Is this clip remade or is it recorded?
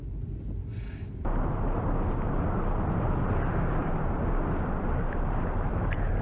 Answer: recorded